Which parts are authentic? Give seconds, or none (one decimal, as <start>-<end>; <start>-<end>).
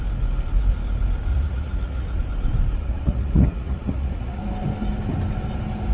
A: 0.0-1.3; 2.2-2.8; 4.4-5.9